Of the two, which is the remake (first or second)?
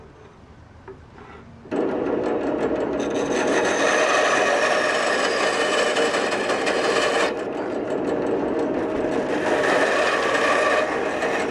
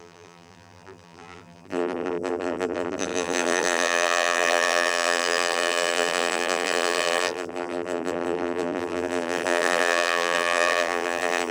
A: second